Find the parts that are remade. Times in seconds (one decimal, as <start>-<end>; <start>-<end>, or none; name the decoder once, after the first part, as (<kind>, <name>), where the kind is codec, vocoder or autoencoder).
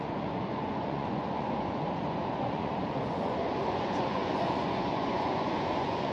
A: 0.0-6.1 (vocoder, Vocos)